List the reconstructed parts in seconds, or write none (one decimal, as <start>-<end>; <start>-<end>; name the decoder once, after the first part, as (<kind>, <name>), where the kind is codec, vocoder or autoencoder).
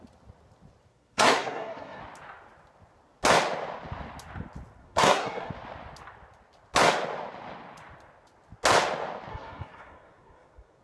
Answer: 0.9-2.0 (codec, SNAC); 4.8-5.5; 9.3-10.8